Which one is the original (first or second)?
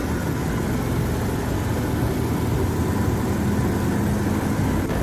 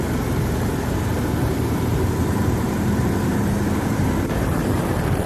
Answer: first